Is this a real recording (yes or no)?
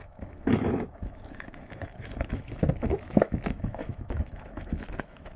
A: no